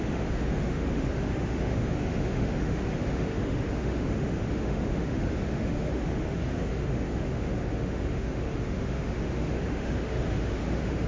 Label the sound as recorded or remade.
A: remade